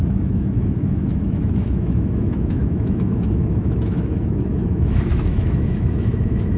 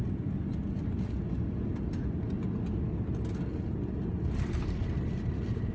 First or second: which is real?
second